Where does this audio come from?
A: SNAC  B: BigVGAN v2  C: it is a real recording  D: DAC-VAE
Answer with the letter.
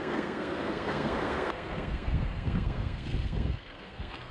A